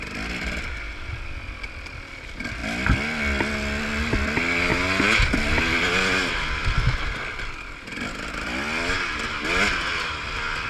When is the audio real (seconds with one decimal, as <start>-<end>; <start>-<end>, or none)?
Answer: 0.0-10.7